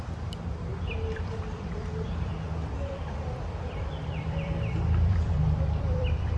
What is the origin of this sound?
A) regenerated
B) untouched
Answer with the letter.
A